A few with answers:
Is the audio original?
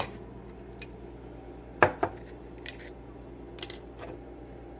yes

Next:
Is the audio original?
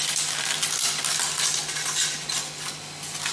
yes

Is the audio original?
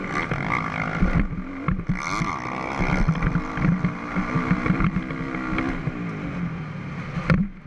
yes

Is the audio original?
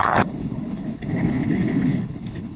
no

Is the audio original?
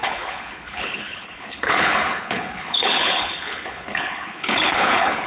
no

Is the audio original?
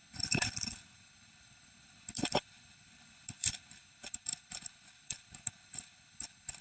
no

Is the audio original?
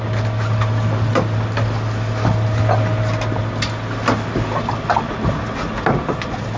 yes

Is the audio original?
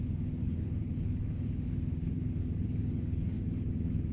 no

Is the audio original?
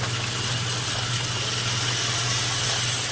yes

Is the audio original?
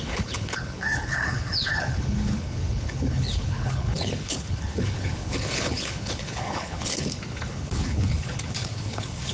no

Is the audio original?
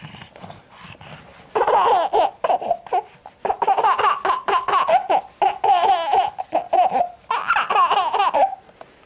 yes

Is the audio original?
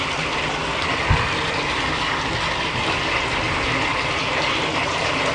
yes